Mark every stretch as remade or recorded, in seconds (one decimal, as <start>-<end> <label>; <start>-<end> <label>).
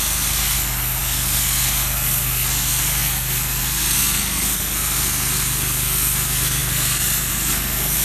0.0-8.0 remade